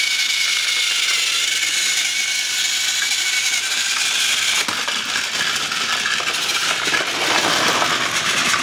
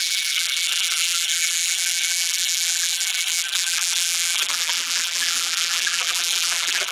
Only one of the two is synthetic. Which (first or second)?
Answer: second